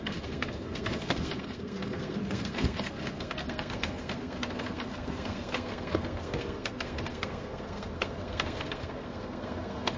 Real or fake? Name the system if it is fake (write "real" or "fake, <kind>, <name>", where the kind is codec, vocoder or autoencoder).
fake, codec, SNAC